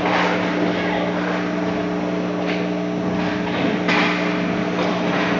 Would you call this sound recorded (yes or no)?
yes